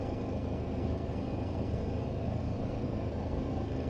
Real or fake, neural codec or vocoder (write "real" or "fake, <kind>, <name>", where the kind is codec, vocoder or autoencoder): fake, codec, SNAC